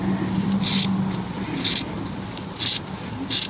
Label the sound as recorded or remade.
recorded